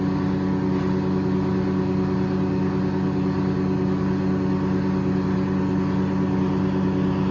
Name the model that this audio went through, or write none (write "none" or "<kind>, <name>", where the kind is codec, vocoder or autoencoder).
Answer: none